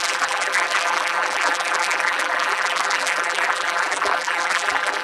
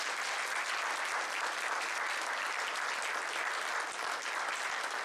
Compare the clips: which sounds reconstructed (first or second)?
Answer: first